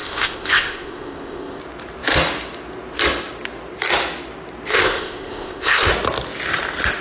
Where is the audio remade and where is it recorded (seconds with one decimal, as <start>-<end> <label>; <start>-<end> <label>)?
0.0-1.6 remade; 1.6-4.7 recorded; 4.7-5.9 remade; 5.9-7.0 recorded